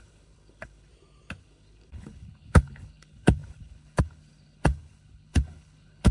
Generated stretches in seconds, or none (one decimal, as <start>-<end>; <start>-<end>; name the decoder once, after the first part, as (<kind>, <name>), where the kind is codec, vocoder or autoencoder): 0.0-0.9 (codec, HILCodec); 1.4-6.1